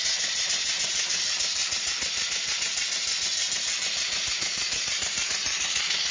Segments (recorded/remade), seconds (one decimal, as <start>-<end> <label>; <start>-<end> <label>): 0.0-6.1 remade